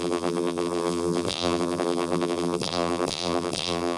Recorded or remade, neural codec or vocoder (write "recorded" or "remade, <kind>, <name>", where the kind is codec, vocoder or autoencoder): remade, vocoder, BigVGAN v2